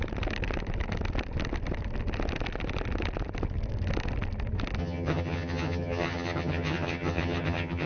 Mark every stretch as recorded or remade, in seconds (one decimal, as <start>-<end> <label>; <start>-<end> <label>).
0.0-4.8 recorded; 4.8-7.9 remade

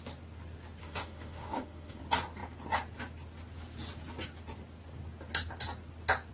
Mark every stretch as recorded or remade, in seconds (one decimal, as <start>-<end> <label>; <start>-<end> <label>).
0.0-0.8 recorded; 0.8-2.0 remade; 2.0-6.3 recorded

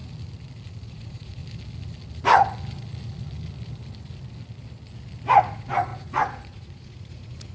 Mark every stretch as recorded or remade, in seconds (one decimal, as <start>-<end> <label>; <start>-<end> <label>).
0.0-0.9 recorded; 0.9-1.4 remade; 1.4-5.3 recorded; 5.3-7.5 remade

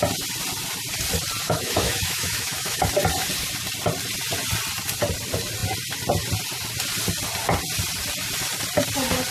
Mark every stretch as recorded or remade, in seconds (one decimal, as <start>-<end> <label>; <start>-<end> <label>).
0.0-1.4 recorded; 1.4-2.8 remade; 2.8-9.3 recorded

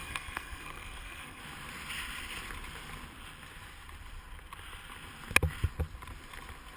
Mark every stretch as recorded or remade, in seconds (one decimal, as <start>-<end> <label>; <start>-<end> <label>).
0.0-1.4 remade; 1.4-6.8 recorded